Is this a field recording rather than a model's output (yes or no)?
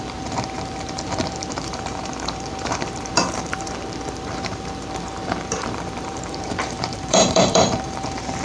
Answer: no